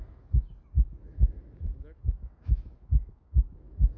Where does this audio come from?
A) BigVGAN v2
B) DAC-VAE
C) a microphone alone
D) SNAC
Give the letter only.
B